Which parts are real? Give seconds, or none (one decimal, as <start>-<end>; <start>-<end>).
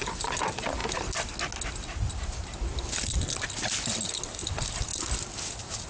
0.0-5.9